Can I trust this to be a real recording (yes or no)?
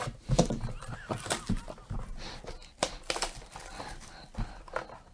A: yes